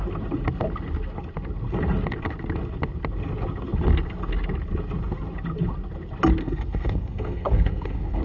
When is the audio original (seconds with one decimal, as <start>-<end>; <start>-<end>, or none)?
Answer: 0.0-6.4